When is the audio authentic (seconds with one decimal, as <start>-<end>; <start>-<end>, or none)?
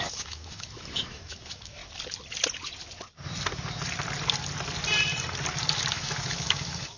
1.8-5.9